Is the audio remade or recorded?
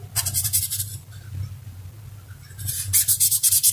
recorded